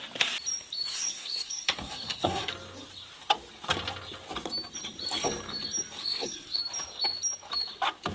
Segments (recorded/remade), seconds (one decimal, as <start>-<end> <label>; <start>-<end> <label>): 0.0-0.9 recorded; 0.9-2.5 remade; 2.5-6.0 recorded; 6.0-6.6 remade; 6.6-8.1 recorded